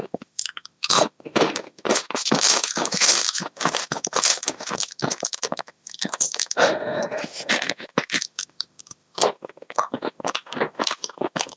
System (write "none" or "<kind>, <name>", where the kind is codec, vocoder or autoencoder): autoencoder, DAC-VAE